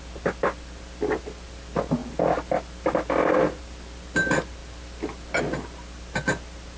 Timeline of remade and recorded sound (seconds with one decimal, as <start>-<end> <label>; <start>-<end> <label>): 0.0-6.8 recorded